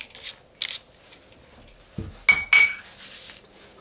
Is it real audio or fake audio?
real